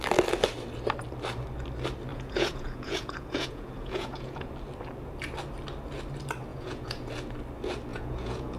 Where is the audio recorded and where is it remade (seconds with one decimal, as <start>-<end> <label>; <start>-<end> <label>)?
0.0-2.1 recorded; 2.1-4.5 remade; 4.5-6.5 recorded; 6.5-7.1 remade; 7.1-7.9 recorded; 7.9-8.6 remade